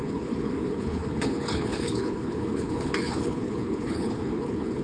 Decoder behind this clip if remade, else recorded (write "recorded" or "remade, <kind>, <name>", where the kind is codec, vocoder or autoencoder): remade, codec, HILCodec